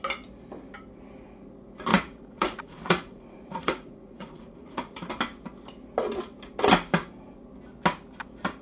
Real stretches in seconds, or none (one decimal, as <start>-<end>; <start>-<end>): 0.0-1.9; 5.1-8.6